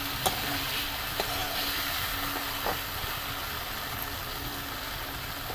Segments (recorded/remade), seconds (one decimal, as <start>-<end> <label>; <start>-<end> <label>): 0.0-5.5 recorded